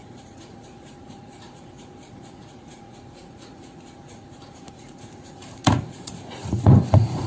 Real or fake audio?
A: fake